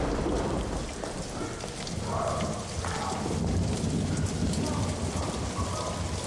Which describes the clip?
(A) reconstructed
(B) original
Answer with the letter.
B